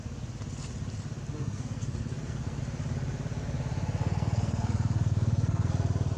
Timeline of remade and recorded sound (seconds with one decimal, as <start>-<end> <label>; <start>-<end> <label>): 0.0-1.4 recorded; 1.4-2.6 remade; 2.6-4.0 recorded; 4.0-5.7 remade; 5.7-6.2 recorded